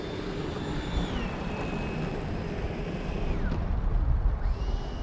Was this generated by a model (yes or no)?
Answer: no